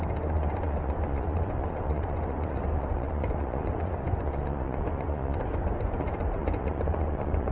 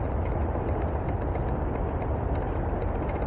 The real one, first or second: second